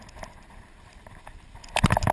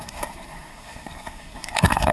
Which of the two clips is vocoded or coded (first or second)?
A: second